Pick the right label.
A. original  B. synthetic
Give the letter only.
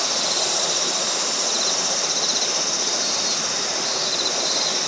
A